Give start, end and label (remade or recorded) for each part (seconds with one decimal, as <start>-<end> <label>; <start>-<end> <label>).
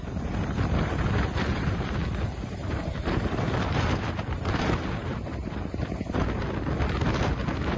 0.0-1.5 recorded; 1.5-6.2 remade; 6.2-7.8 recorded